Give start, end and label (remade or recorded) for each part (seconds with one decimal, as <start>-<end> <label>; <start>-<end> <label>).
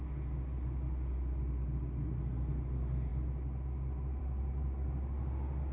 0.0-5.7 recorded